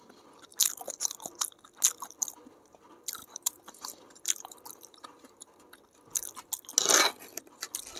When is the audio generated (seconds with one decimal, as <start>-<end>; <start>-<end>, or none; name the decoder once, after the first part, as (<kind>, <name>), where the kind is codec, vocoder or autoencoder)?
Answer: 3.2-5.6 (vocoder, BigVGAN v2)